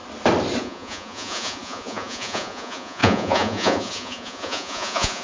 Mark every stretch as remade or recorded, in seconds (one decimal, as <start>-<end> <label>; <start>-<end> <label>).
0.0-0.6 recorded; 0.6-5.2 remade